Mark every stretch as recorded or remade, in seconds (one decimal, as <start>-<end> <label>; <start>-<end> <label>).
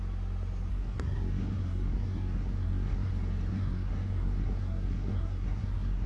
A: 0.0-0.7 recorded; 0.7-3.1 remade; 3.1-3.5 recorded; 3.5-6.1 remade